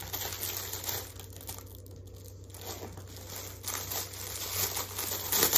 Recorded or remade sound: recorded